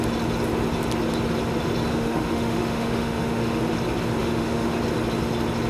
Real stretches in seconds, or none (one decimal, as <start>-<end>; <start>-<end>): 0.0-1.9; 3.6-4.2; 4.8-5.7